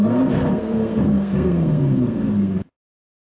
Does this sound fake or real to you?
fake